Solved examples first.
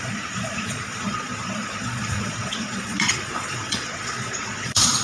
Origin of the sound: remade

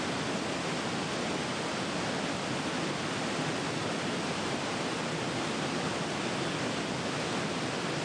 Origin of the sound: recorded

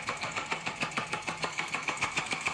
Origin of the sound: remade